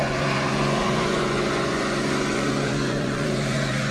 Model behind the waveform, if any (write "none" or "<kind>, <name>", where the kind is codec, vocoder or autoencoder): vocoder, Vocos